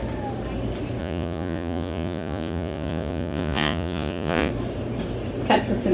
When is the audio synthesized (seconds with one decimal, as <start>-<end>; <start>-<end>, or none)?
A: 1.0-4.5

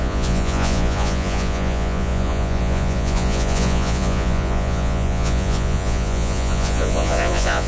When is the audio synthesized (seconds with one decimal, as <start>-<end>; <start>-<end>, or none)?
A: 0.0-7.7

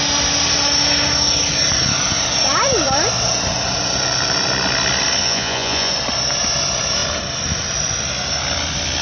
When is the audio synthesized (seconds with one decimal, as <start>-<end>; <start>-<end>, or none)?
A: 5.2-5.9

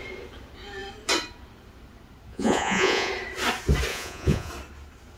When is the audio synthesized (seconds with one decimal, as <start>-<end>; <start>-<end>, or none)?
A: 2.3-3.1; 3.9-4.5

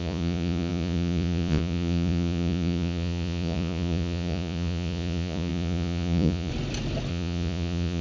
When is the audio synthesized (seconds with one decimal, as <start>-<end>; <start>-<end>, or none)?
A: 0.0-6.5; 7.1-8.0